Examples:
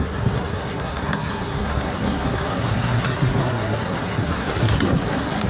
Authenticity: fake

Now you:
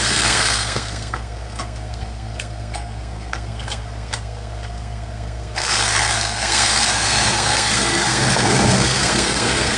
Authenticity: fake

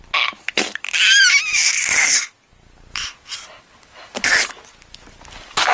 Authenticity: real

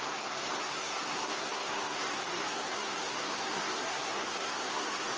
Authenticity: fake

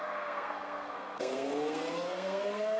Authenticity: fake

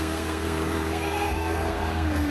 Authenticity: fake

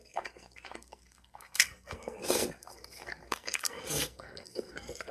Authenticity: fake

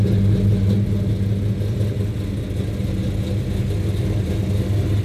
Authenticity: real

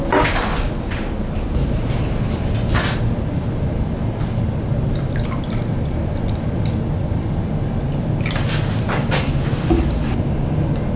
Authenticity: real